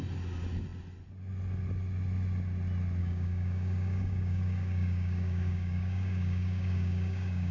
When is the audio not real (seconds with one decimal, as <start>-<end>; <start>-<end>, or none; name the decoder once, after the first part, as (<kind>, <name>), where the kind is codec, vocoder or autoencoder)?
3.0-7.5 (codec, DAC)